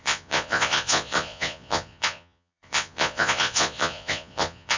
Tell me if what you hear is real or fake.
fake